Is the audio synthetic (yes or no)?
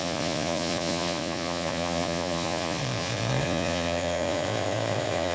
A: yes